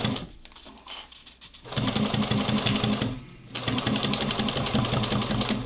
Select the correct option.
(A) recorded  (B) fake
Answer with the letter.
A